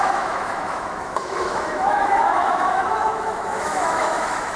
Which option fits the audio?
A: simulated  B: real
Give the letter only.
A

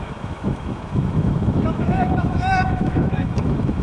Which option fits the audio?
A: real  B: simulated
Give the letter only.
B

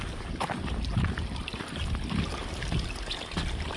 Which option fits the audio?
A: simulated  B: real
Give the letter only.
B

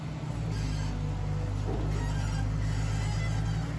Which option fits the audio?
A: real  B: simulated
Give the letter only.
A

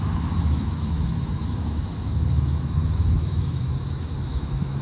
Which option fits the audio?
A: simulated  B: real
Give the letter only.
A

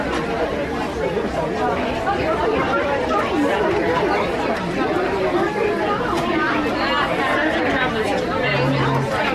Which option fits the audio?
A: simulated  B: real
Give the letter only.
B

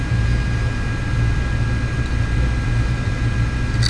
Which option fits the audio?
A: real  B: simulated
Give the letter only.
A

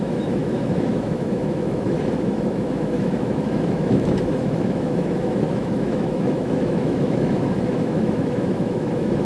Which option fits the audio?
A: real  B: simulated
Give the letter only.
B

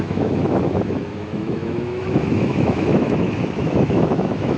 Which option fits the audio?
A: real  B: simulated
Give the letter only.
B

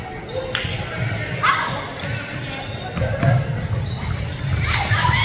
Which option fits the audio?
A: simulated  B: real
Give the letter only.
B